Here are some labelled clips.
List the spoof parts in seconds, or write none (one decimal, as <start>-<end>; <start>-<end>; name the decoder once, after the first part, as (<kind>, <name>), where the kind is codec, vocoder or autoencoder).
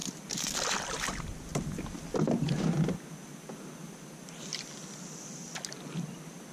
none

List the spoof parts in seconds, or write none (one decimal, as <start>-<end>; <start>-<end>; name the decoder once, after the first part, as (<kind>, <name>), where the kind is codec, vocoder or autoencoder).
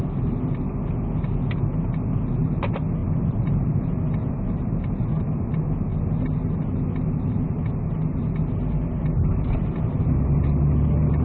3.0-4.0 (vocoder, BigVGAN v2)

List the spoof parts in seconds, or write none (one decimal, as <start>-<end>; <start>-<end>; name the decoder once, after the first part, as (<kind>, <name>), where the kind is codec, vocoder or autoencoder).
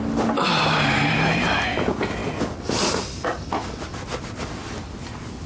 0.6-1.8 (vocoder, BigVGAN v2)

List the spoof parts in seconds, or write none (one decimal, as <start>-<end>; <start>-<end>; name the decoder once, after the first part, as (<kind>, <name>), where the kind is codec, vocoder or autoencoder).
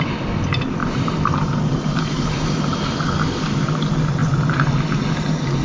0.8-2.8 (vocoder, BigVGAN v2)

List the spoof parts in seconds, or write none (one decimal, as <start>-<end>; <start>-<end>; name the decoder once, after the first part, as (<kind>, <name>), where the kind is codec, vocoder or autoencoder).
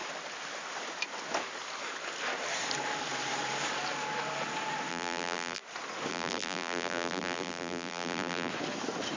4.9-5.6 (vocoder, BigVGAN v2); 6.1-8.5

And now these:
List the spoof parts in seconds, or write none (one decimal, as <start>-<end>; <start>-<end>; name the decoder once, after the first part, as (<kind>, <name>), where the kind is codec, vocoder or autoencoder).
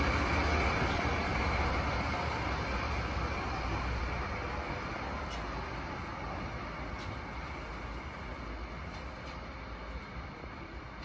none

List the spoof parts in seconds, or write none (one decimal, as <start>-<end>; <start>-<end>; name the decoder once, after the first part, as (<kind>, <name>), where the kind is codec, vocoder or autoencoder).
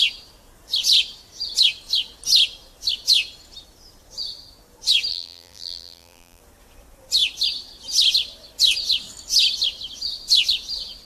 5.1-6.4 (vocoder, BigVGAN v2)